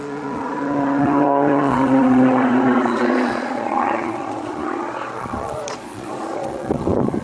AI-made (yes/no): yes